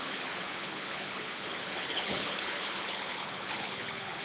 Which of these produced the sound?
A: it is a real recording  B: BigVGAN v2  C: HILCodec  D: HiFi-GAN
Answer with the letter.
C